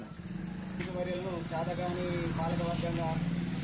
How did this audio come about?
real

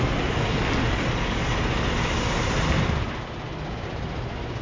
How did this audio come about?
real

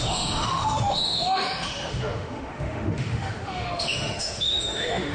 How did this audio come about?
fake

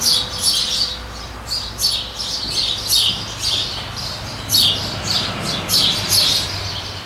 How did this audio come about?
real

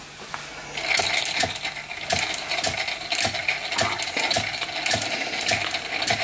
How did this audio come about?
real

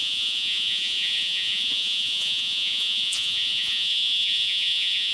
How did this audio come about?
fake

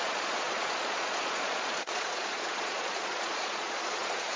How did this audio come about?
fake